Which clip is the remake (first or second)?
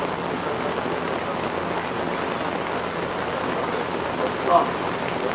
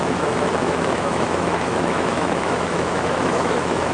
second